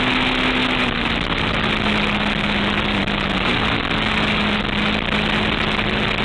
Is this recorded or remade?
recorded